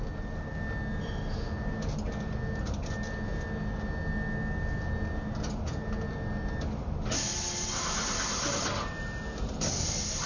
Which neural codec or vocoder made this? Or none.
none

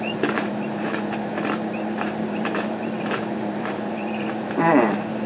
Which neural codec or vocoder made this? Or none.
vocoder, BigVGAN v2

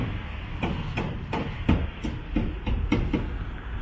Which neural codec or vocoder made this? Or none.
none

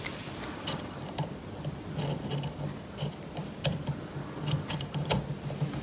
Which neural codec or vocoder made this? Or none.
none